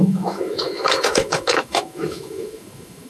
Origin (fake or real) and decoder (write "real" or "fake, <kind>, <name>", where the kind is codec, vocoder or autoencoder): fake, autoencoder, DAC-VAE